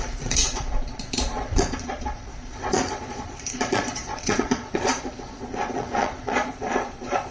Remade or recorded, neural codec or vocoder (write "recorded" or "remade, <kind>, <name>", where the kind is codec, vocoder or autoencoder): remade, vocoder, Vocos